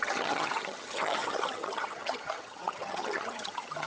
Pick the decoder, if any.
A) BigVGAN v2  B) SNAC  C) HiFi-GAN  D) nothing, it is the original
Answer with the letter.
C